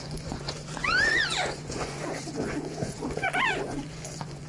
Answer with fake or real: fake